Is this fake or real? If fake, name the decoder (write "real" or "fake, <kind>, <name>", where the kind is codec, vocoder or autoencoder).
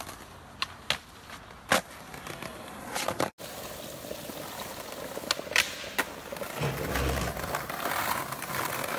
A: real